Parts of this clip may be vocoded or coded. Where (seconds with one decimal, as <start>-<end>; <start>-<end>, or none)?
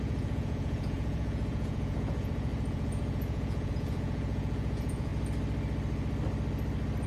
0.0-5.1